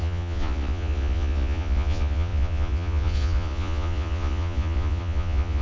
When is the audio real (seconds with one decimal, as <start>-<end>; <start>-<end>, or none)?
none